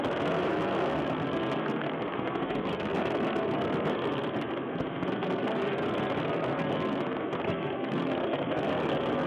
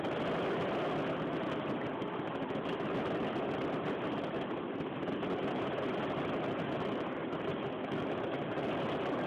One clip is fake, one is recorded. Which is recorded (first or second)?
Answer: second